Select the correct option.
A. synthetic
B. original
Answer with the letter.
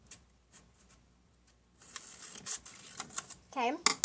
B